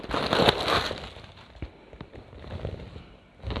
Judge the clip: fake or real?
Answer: real